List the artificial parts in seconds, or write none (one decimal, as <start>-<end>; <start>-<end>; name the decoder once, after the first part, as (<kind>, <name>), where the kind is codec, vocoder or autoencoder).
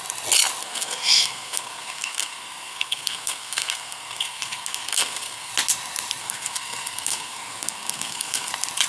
0.6-5.5 (codec, SNAC); 6.2-8.5